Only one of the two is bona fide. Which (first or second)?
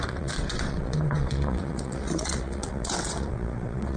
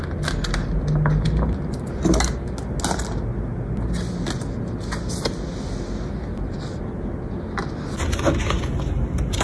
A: second